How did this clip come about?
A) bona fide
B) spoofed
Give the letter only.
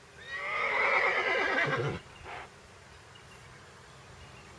A